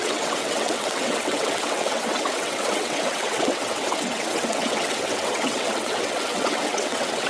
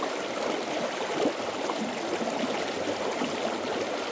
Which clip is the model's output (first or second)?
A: first